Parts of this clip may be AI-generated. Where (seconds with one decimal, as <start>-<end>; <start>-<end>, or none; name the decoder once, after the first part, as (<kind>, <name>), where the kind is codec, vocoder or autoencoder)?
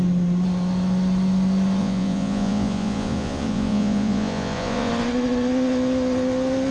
1.8-4.9 (vocoder, Vocos)